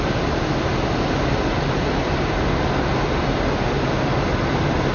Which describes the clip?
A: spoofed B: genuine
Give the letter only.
B